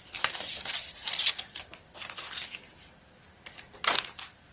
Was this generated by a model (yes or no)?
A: no